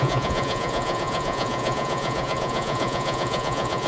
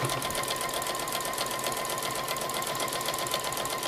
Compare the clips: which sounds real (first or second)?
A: second